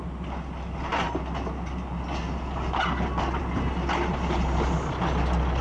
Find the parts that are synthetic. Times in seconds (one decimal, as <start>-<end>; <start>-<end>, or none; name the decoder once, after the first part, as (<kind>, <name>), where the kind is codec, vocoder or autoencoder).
none